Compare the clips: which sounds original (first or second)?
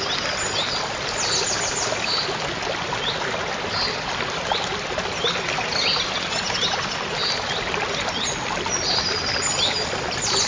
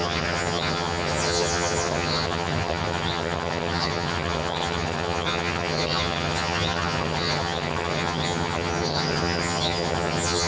first